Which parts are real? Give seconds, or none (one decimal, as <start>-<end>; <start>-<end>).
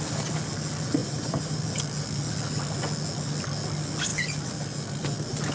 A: 0.0-1.0; 1.6-5.5